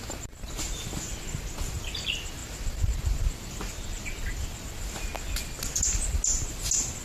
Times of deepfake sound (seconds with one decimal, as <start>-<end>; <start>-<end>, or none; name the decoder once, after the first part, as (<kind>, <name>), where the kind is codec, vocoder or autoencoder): none

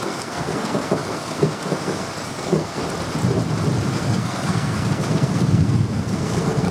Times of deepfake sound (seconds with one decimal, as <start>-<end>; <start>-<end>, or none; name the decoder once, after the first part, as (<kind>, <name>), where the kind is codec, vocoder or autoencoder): 0.0-2.8 (codec, SNAC); 3.9-6.7

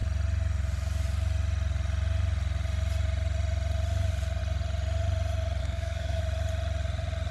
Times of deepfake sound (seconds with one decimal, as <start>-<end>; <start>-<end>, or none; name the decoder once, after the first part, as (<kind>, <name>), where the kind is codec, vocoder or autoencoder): 5.6-6.2 (codec, SNAC)

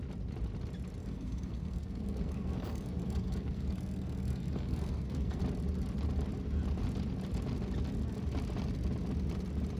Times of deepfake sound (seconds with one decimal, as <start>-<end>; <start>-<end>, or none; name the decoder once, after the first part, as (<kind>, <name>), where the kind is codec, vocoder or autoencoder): 1.0-5.4 (codec, SNAC)

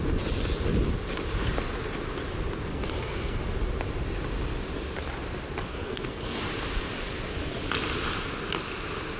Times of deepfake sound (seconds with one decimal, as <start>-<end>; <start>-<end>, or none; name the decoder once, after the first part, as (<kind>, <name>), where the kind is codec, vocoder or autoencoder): 2.7-3.4 (codec, SNAC); 5.7-6.4

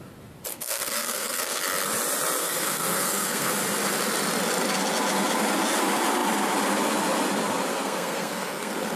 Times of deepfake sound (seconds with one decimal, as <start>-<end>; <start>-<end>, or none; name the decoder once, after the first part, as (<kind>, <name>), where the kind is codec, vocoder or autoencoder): 0.5-1.6 (codec, SNAC); 2.4-3.5; 7.7-9.0

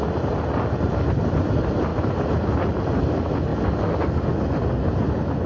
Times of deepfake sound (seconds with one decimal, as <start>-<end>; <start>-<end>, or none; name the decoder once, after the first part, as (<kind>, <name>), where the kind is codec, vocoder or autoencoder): none